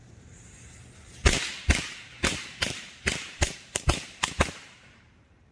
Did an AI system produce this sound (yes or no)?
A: yes